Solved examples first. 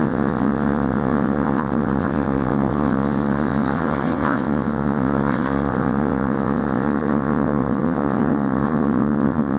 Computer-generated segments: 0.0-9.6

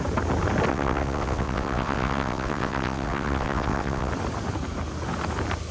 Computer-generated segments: 0.7-4.1

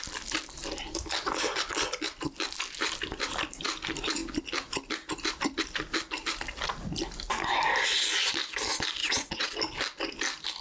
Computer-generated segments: 9.0-9.5